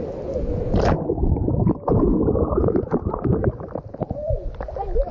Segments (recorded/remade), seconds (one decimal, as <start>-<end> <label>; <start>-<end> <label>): 0.0-5.1 recorded